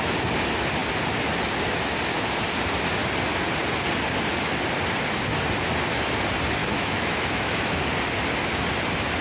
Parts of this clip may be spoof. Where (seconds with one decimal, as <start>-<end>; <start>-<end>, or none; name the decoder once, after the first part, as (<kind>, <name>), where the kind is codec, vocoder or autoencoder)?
6.6-7.8 (autoencoder, DAC-VAE)